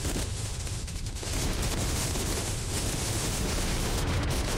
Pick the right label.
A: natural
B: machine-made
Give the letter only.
B